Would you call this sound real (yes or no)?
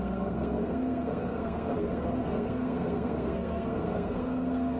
no